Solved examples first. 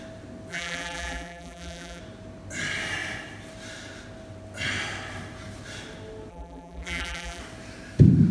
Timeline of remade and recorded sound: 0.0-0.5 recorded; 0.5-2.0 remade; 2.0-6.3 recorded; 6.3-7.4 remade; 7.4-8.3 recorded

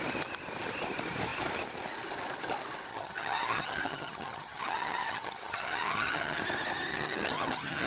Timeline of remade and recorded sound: 0.0-2.9 recorded; 2.9-6.4 remade; 6.4-6.9 recorded; 6.9-7.9 remade

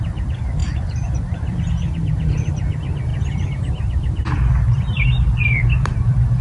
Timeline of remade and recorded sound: 0.0-3.1 remade; 3.1-4.6 recorded; 4.6-6.4 remade

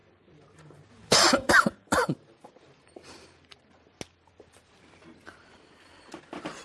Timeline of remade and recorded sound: 0.0-4.0 remade; 4.0-6.6 recorded

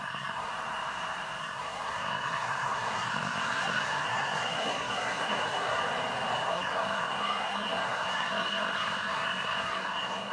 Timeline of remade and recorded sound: 0.0-0.5 remade; 0.5-1.4 recorded; 1.4-5.8 remade; 5.8-6.3 recorded; 6.3-10.3 remade